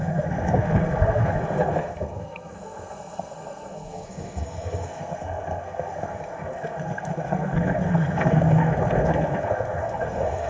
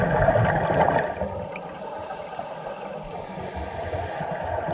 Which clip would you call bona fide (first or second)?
second